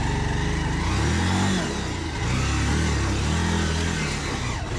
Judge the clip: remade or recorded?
recorded